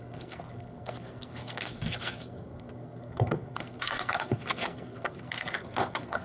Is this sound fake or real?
fake